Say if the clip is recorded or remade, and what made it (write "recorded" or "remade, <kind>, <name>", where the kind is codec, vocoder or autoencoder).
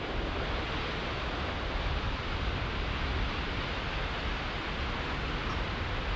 recorded